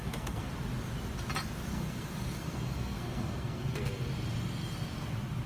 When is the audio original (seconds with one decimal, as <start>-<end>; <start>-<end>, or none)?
0.5-1.7; 4.0-5.5